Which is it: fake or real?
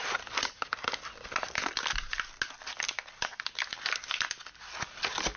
real